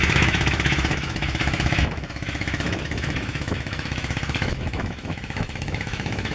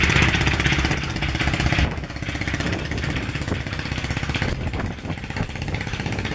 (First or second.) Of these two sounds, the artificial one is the first